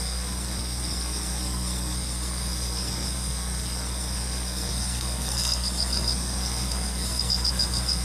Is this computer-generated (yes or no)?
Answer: yes